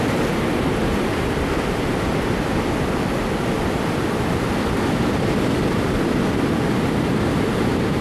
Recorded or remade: recorded